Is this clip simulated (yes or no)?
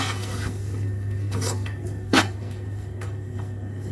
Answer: yes